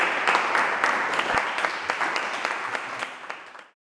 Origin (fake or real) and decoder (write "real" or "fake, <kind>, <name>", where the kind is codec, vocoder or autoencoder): real